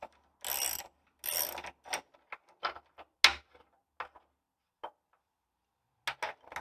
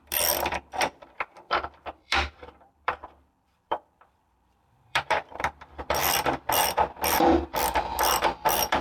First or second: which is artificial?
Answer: second